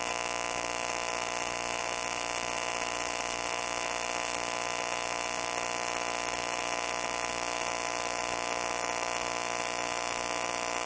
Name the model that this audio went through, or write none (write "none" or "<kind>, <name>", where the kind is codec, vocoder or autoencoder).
none